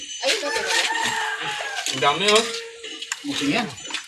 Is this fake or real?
real